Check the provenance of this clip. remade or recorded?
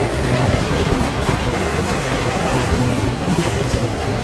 remade